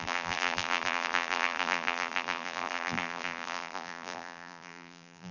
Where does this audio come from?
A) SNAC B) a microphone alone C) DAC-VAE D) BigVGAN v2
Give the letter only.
D